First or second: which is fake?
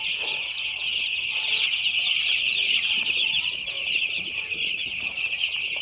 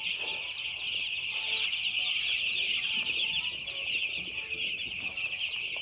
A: first